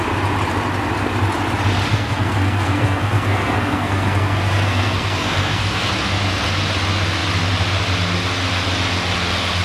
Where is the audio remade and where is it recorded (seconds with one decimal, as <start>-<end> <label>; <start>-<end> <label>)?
0.0-1.9 recorded; 1.9-5.9 remade; 5.9-9.6 recorded